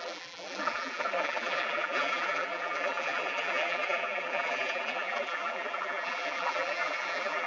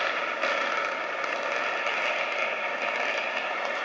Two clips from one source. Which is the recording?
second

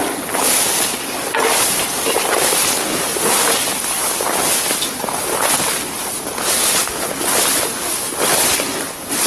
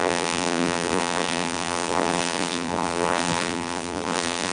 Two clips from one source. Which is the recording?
first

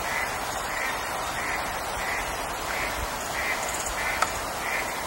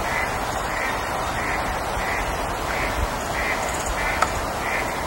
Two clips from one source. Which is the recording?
second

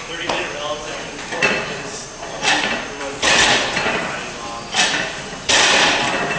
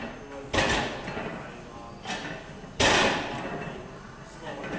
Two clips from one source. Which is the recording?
second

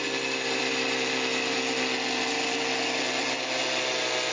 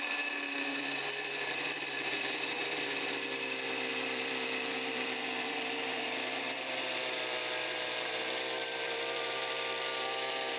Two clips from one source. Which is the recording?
first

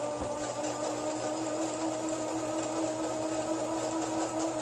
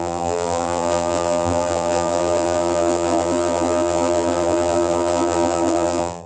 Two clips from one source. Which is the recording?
first